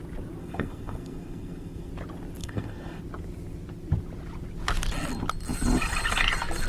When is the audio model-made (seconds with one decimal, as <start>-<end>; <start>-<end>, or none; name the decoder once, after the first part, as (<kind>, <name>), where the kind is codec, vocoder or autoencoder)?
0.4-1.9 (codec, SNAC); 2.4-3.0

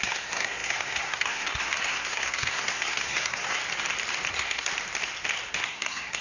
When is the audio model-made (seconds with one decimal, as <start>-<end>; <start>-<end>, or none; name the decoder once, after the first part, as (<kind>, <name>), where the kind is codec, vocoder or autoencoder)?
0.0-3.6 (codec, SNAC); 4.3-4.7; 5.5-6.2